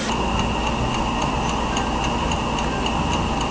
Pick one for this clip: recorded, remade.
recorded